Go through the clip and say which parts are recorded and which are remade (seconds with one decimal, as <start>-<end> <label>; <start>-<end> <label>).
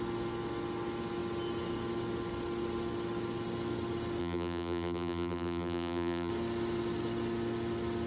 0.0-4.2 recorded; 4.2-6.3 remade; 6.3-8.1 recorded